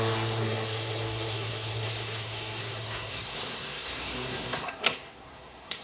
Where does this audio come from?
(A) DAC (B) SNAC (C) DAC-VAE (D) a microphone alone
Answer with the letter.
B